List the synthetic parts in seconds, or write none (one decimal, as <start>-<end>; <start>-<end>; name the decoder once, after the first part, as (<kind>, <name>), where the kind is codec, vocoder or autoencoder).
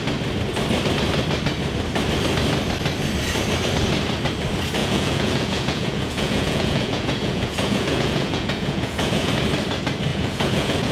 4.8-9.3 (vocoder, Vocos); 10.1-10.9